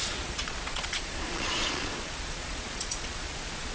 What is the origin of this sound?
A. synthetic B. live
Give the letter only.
A